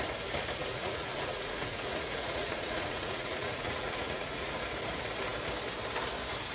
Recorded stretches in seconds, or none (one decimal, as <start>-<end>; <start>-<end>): 0.0-0.6; 4.5-6.5